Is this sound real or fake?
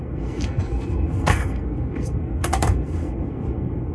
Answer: fake